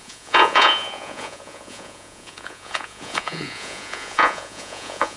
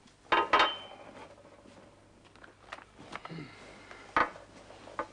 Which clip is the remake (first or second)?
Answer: first